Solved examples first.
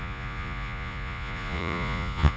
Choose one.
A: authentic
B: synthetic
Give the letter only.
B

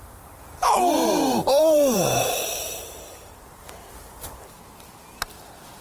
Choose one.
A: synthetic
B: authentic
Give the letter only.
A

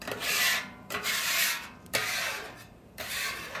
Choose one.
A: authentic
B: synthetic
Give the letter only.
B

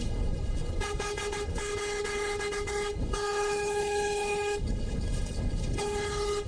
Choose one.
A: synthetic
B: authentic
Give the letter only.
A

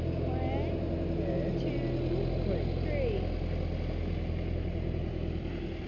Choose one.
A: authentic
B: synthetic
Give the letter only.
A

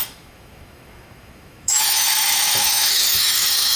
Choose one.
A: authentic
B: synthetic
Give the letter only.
B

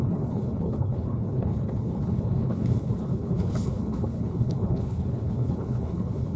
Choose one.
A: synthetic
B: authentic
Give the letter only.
A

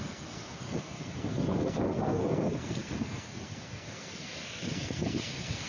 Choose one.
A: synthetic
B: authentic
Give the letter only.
A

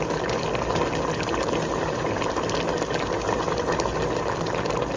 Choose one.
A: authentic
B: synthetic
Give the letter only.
A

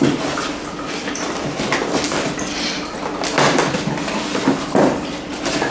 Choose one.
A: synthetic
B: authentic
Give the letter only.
B